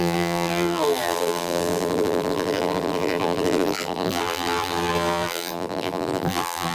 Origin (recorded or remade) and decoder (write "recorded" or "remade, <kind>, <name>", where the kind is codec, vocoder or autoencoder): remade, vocoder, BigVGAN v2